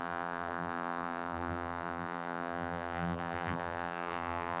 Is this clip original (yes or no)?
no